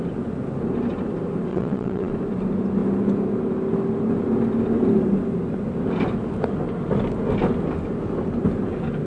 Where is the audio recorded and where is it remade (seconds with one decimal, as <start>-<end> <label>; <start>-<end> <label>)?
0.0-1.5 recorded; 1.5-2.1 remade; 2.1-9.1 recorded